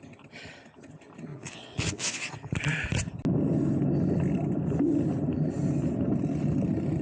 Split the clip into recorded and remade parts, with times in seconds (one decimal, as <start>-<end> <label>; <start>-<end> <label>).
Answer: 0.0-1.3 recorded; 1.3-2.3 remade; 2.3-7.0 recorded